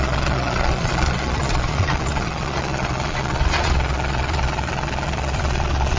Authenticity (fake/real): fake